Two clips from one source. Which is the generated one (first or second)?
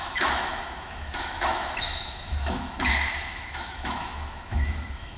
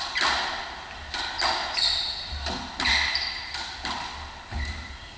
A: first